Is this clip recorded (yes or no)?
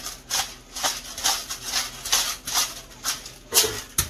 yes